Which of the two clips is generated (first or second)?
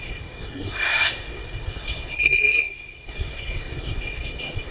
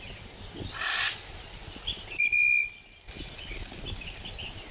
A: first